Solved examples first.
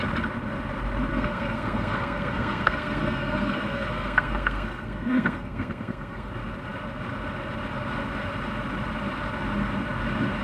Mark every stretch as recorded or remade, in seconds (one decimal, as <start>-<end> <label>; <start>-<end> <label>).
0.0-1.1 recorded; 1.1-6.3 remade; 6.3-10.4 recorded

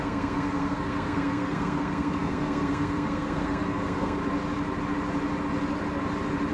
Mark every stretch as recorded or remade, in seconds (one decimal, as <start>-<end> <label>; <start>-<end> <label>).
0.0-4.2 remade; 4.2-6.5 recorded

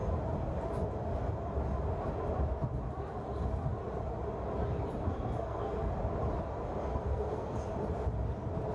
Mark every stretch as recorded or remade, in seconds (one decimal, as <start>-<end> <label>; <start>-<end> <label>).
0.0-5.0 recorded; 5.0-5.9 remade; 5.9-6.9 recorded; 6.9-7.6 remade; 7.6-8.7 recorded